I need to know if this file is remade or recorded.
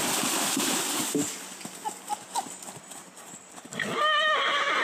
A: recorded